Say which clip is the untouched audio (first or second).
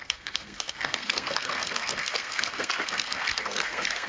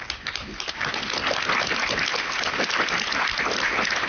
second